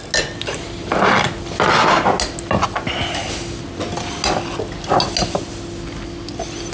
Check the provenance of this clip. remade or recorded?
recorded